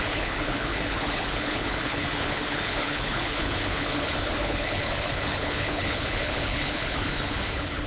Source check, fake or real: fake